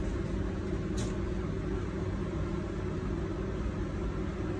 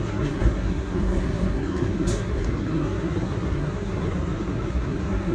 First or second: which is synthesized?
second